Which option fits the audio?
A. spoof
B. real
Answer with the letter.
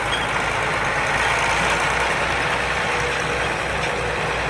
B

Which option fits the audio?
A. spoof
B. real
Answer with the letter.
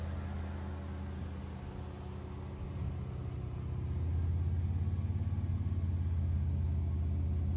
B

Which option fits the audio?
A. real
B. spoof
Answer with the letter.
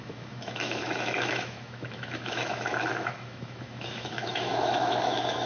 B